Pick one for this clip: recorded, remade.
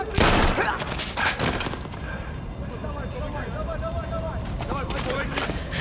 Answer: recorded